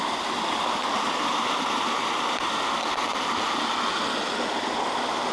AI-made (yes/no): no